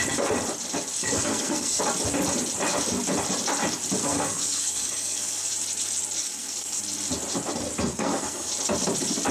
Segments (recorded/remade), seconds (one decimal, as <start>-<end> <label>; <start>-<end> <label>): 0.0-1.0 recorded; 1.0-1.8 remade; 1.8-4.0 recorded; 4.0-5.5 remade; 5.5-6.2 recorded; 6.2-6.8 remade; 6.8-7.9 recorded; 7.9-8.5 remade; 8.5-9.3 recorded